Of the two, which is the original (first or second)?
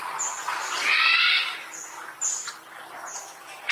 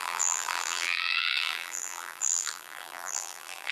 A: first